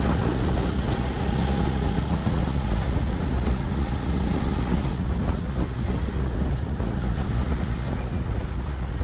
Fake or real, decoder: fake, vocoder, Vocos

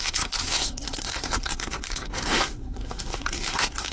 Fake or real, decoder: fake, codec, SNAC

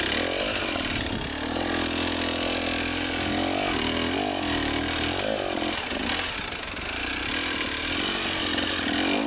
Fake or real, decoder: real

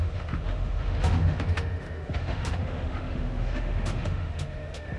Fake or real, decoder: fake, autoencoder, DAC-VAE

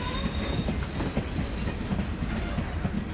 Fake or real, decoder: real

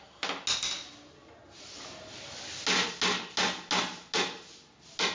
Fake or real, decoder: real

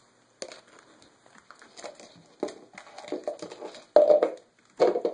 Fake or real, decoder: real